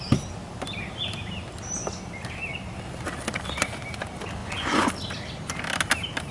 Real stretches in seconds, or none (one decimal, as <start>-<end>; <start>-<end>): 0.0-4.4; 4.9-6.3